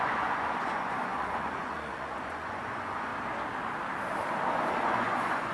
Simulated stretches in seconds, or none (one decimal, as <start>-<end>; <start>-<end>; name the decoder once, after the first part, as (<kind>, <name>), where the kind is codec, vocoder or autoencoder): 0.0-3.1 (vocoder, Vocos); 4.5-5.5